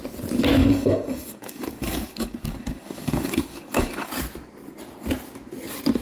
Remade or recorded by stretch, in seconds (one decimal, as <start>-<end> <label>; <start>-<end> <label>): 0.0-0.6 recorded; 0.6-4.1 remade; 4.1-6.0 recorded